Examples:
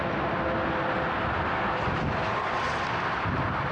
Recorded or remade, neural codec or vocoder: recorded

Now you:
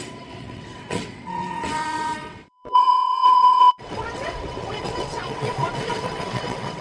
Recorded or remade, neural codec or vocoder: remade, vocoder, WaveNeXt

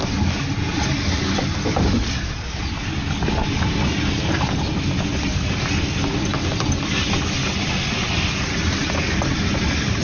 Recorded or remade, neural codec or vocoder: recorded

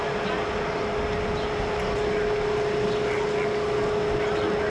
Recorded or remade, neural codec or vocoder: recorded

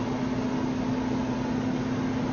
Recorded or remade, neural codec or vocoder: recorded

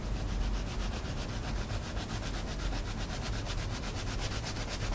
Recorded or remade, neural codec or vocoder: recorded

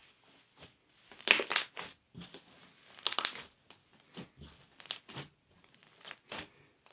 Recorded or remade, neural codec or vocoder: recorded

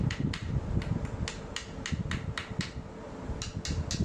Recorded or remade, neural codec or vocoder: recorded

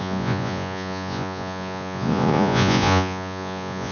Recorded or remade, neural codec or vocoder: remade, vocoder, Vocos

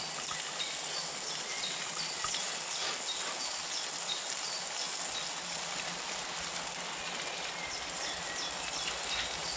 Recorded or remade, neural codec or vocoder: recorded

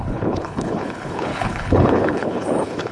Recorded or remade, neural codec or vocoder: remade, codec, HILCodec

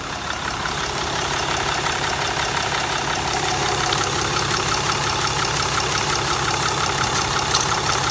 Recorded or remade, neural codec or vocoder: remade, vocoder, BigVGAN v2